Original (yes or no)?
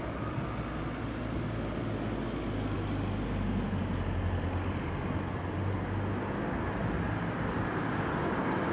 yes